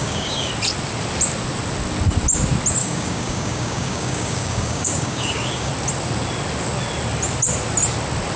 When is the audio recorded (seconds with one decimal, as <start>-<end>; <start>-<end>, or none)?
0.5-2.8; 5.7-8.4